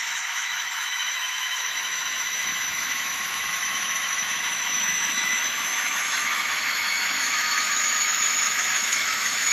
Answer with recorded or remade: remade